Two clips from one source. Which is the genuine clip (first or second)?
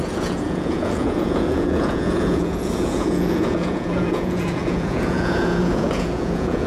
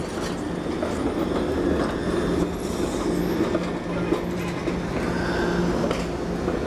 second